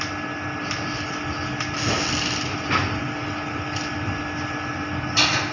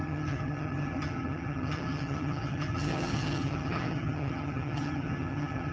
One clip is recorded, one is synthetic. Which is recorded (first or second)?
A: first